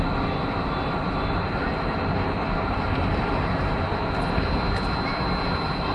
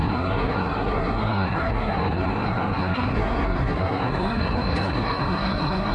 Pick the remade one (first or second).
second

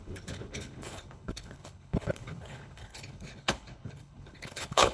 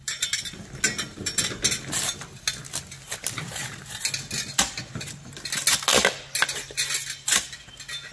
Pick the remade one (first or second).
first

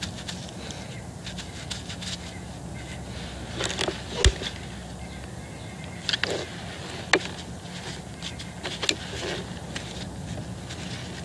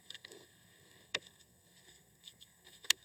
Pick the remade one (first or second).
second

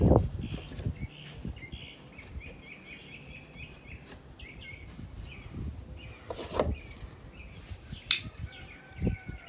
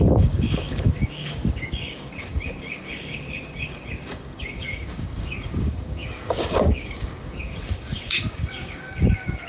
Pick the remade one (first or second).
second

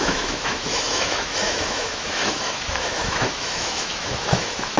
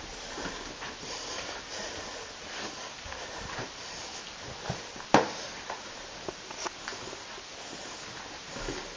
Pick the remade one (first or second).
first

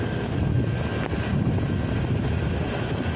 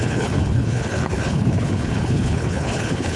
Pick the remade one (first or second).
second